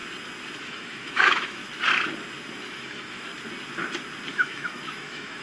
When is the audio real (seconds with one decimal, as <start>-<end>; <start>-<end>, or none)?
0.0-0.6; 1.6-2.5; 3.3-4.3

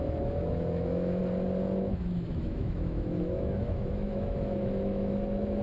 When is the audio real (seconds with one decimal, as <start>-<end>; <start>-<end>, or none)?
1.2-1.8

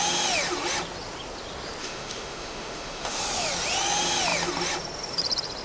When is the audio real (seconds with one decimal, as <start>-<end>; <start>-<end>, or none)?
0.0-1.8; 3.2-5.6